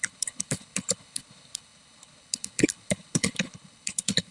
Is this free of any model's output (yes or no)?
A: no